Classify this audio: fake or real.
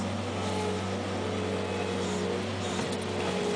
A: real